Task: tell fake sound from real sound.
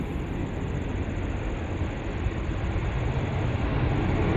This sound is real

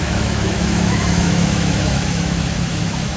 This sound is fake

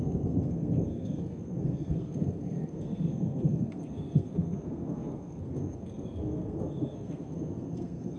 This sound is fake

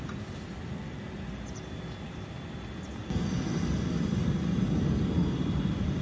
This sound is real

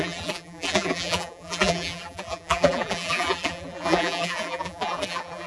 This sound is fake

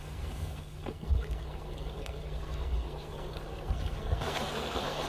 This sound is fake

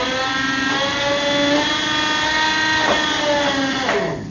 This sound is real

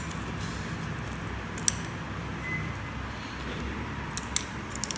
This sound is real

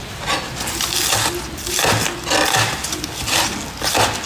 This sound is real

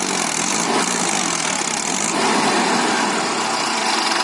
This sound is real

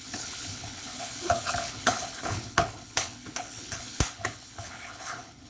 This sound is fake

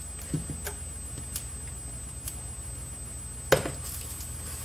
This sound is real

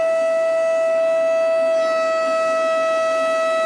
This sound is real